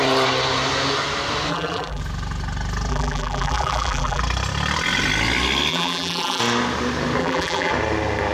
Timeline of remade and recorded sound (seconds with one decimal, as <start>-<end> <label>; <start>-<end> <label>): 0.0-1.5 recorded; 1.5-2.0 remade; 2.0-2.9 recorded; 2.9-4.2 remade; 4.2-5.7 recorded; 5.7-6.4 remade; 6.4-7.2 recorded; 7.2-7.7 remade; 7.7-8.3 recorded